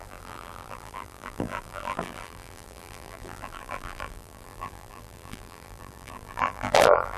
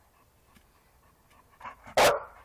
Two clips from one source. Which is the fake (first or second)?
first